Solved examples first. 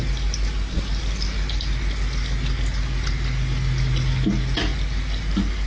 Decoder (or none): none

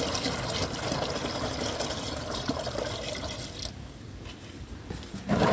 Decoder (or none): none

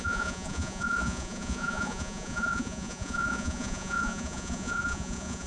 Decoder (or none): vocoder, Vocos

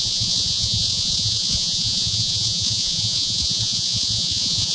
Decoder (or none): vocoder, Vocos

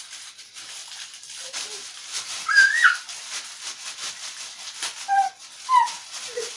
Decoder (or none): none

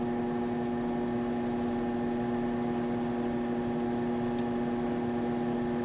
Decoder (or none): none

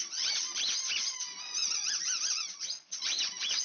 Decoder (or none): vocoder, Vocos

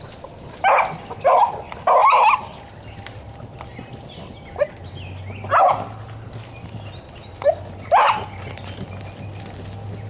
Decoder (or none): none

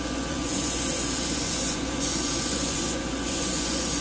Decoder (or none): vocoder, Vocos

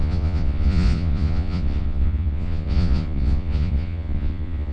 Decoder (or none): vocoder, Vocos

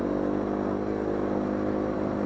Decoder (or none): none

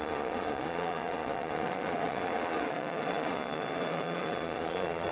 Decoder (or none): vocoder, Vocos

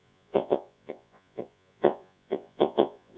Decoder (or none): vocoder, Vocos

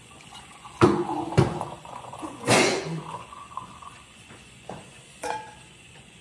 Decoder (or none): vocoder, Vocos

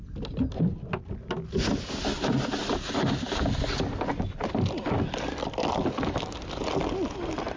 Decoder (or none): none